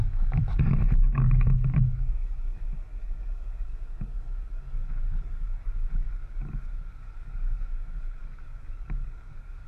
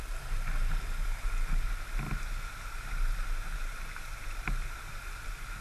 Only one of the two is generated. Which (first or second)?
first